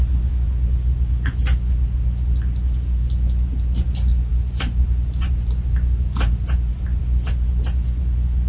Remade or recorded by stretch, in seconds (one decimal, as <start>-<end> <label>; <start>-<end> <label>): 0.0-4.3 recorded; 4.3-7.0 remade; 7.0-8.5 recorded